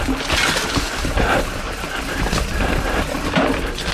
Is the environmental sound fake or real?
real